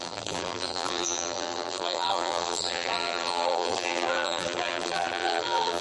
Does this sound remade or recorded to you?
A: remade